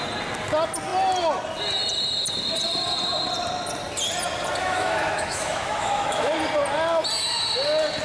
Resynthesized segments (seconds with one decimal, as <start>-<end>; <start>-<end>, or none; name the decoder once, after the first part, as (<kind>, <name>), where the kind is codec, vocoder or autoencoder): 4.6-6.3 (autoencoder, DAC-VAE)